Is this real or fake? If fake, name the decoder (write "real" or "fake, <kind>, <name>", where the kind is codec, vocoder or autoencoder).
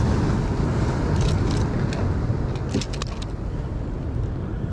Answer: real